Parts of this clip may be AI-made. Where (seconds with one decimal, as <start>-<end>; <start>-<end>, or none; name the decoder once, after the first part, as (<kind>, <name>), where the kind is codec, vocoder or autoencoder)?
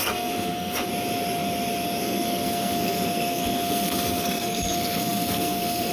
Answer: 0.0-0.9 (codec, SNAC); 2.0-5.9